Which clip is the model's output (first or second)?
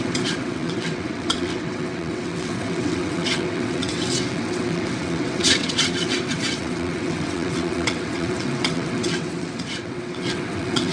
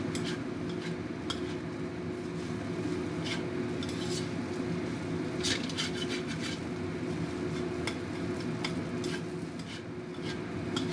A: first